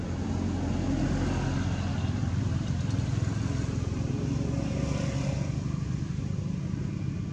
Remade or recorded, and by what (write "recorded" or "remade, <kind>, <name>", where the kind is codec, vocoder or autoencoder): recorded